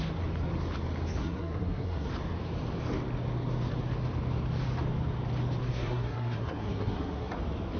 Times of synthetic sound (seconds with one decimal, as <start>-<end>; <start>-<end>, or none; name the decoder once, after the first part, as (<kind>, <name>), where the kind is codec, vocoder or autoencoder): 1.2-2.1 (codec, SNAC); 5.6-7.3